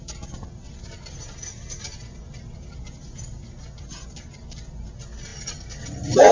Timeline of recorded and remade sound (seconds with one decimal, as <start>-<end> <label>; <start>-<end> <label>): 0.0-6.3 recorded